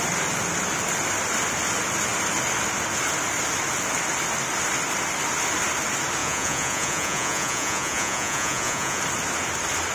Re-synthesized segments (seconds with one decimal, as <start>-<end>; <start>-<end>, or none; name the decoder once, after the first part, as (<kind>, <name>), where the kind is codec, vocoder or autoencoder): 6.2-9.0 (vocoder, Vocos)